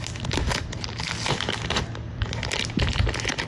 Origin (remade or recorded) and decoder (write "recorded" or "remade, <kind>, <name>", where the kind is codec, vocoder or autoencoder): recorded